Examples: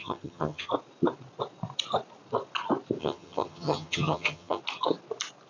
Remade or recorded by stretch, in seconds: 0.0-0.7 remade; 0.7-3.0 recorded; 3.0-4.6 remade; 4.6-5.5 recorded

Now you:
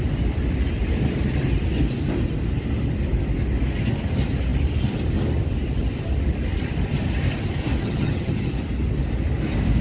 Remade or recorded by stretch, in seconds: 0.0-7.8 recorded; 7.8-8.5 remade; 8.5-9.8 recorded

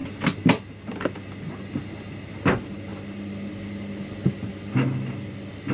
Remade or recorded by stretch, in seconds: 0.0-5.7 recorded

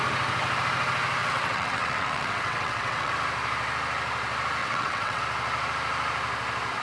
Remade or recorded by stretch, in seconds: 0.0-1.2 recorded; 1.2-3.1 remade; 3.1-4.6 recorded; 4.6-5.2 remade; 5.2-6.8 recorded

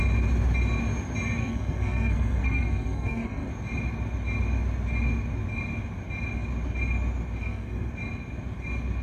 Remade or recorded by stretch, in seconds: 0.0-1.4 recorded; 1.4-3.5 remade; 3.5-7.4 recorded; 7.4-7.9 remade; 7.9-9.0 recorded

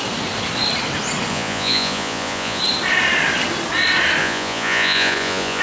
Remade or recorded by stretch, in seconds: 0.0-1.3 recorded; 1.3-2.6 remade; 2.6-4.2 recorded; 4.2-5.6 remade

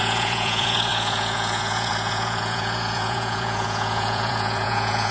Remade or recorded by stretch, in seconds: 0.0-5.1 remade